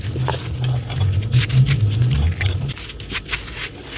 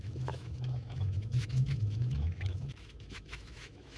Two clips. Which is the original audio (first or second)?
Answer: first